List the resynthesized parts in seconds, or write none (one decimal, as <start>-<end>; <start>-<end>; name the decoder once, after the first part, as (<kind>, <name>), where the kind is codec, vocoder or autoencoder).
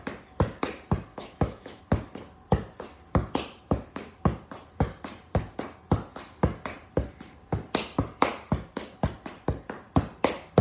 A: 1.1-1.8 (autoencoder, DAC-VAE)